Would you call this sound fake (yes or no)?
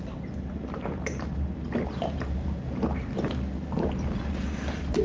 no